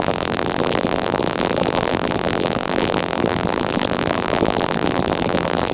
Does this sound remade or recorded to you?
remade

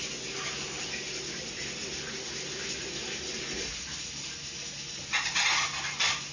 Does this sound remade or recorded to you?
recorded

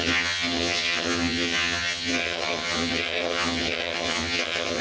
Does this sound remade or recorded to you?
remade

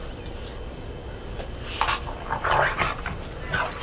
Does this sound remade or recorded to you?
recorded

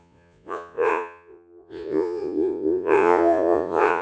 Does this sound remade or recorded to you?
remade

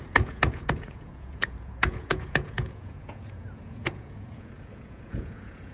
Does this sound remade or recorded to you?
remade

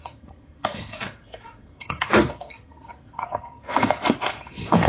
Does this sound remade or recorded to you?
remade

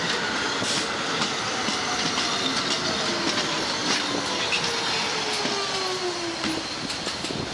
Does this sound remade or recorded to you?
recorded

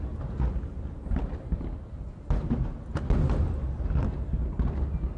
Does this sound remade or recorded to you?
recorded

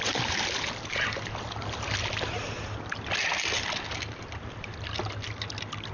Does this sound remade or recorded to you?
recorded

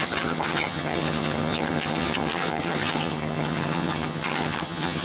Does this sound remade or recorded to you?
remade